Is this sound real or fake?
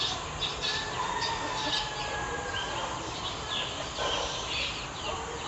real